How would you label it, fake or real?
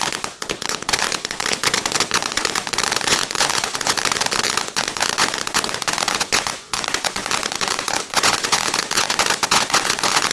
fake